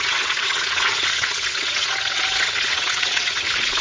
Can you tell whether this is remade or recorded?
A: remade